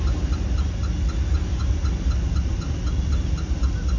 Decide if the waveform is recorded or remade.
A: recorded